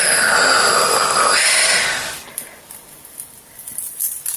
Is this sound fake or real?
real